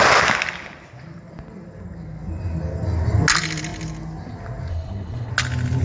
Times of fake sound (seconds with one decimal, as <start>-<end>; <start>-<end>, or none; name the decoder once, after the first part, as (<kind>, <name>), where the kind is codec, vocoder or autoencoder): 4.7-5.3 (codec, HILCodec)